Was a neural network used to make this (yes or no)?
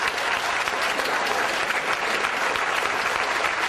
no